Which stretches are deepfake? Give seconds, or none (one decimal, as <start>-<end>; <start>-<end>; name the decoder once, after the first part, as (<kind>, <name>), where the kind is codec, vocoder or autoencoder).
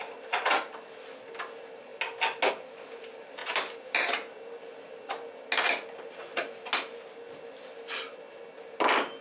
none